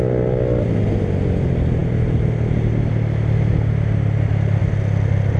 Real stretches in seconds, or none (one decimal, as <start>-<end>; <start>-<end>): 0.0-5.4